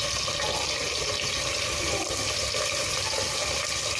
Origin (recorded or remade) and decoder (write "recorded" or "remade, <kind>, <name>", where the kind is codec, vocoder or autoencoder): recorded